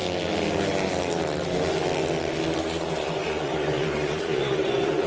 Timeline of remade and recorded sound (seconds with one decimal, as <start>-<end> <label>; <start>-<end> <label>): 0.0-2.6 recorded; 2.6-5.1 remade